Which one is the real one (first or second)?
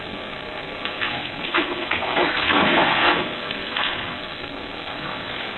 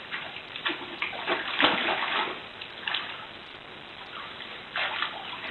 second